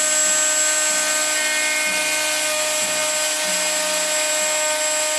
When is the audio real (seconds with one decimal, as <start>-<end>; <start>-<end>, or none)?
0.0-5.2